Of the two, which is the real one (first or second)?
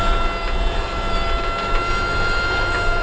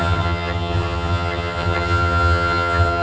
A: first